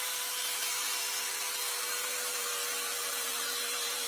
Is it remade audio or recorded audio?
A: remade